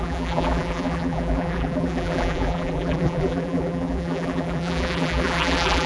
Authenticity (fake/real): fake